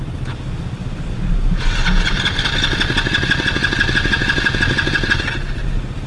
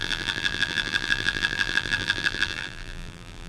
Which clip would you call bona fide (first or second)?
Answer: first